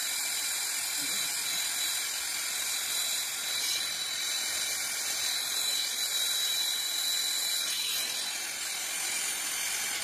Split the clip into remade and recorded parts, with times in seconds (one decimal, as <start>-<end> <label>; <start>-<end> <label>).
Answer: 0.0-10.0 recorded